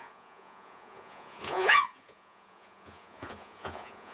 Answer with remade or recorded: remade